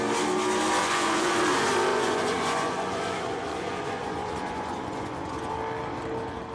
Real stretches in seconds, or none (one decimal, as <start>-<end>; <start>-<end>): 0.0-0.8; 1.4-1.9; 5.5-6.5